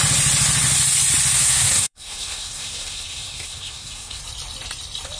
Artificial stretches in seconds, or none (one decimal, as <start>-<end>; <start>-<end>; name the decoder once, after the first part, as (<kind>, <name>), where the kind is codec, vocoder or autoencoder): 1.4-4.2 (codec, SNAC)